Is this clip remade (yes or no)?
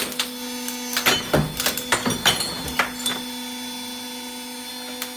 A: no